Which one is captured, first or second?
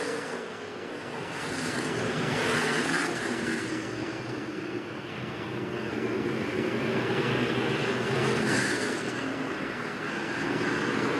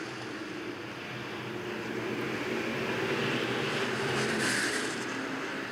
second